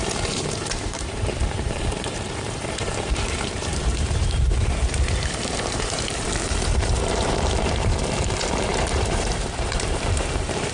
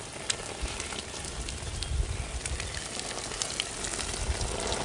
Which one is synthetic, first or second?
first